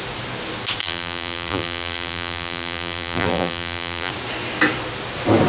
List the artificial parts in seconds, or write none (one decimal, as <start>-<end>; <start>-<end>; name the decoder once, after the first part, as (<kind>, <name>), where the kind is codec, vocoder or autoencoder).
0.8-4.1 (vocoder, BigVGAN v2)